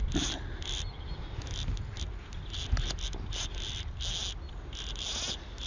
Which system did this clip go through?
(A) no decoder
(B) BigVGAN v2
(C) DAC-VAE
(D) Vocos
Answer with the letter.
A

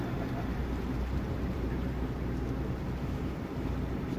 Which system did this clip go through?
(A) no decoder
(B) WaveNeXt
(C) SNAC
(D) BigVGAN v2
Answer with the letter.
D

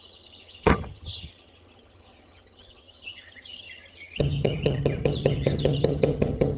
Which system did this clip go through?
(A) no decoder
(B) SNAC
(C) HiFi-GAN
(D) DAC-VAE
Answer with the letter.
C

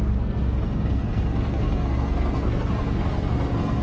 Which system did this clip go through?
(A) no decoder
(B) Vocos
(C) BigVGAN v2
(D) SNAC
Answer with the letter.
D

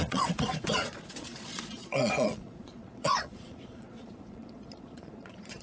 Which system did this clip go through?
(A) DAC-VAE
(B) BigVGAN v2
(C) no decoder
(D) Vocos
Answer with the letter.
D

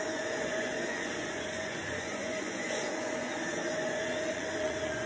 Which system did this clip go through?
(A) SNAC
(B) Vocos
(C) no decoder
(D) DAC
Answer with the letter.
B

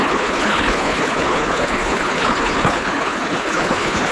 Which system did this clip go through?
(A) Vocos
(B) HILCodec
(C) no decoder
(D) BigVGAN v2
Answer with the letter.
B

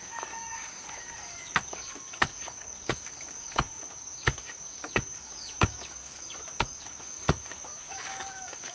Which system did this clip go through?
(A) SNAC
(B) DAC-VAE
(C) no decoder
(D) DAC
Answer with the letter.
D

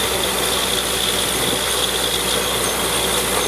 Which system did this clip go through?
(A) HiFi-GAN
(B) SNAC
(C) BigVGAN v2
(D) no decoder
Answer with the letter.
D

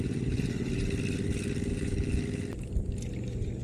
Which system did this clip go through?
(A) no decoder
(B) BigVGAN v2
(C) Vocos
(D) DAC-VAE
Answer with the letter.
A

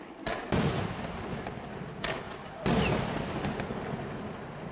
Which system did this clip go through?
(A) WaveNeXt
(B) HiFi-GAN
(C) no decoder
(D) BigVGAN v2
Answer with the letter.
D